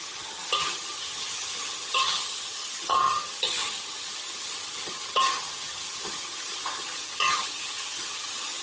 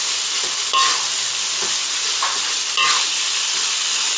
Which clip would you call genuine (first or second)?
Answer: second